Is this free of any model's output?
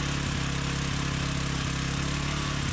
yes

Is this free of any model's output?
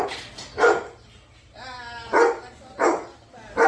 yes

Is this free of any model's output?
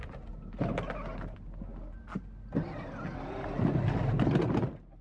yes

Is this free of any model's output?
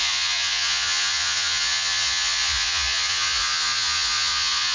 no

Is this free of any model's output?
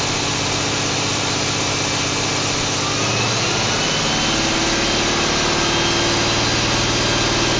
yes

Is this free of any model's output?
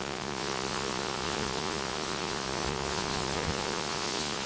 no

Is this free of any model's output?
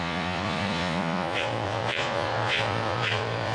no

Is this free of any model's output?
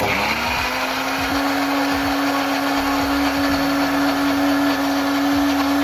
yes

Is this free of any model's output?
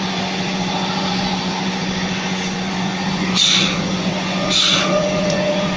no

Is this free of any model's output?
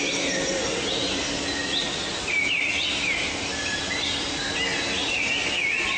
yes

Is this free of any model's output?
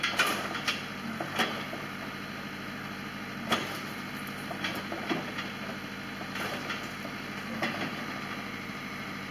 yes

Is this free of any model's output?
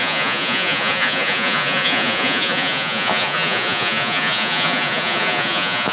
no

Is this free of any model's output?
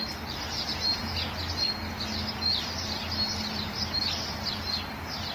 yes